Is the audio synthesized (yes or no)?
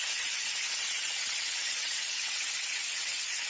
yes